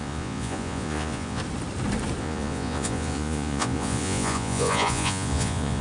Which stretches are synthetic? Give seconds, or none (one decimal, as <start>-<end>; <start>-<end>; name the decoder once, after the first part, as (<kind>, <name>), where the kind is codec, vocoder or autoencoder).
0.0-1.4 (vocoder, Vocos); 2.2-5.8